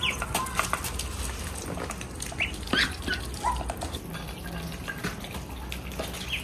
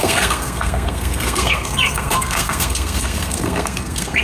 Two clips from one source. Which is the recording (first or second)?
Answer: first